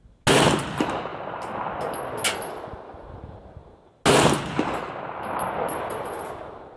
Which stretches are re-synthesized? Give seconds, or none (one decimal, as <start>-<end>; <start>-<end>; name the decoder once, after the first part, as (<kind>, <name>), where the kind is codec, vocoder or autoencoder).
1.1-1.7 (vocoder, BigVGAN v2)